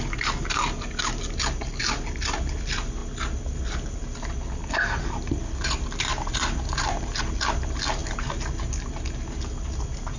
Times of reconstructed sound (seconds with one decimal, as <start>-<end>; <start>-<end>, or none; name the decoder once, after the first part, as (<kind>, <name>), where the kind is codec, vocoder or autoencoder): none